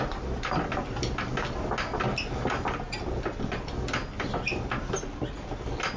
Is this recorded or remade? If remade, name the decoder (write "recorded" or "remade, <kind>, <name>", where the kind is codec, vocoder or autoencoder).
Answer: recorded